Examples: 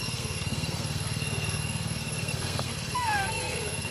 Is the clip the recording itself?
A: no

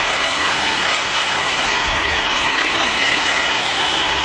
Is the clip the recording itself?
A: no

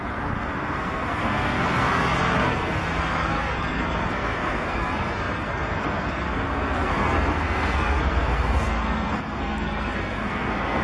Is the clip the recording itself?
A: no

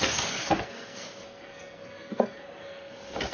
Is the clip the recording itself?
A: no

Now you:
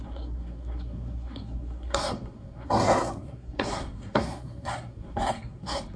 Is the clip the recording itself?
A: no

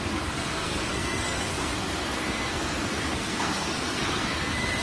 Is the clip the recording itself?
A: no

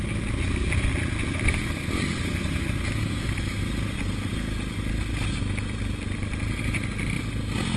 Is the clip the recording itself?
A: yes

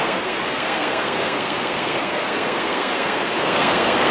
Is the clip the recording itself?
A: no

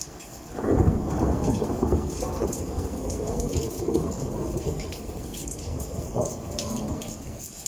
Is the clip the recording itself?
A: no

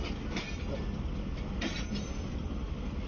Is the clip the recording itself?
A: yes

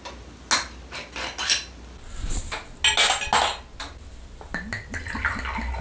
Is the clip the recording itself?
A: yes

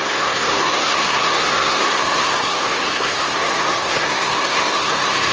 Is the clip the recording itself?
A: no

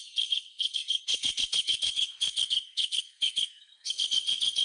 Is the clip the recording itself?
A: no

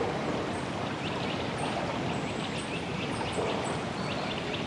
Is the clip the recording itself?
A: yes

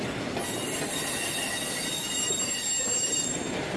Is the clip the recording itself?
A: yes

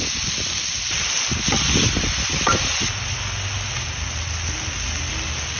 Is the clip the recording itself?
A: yes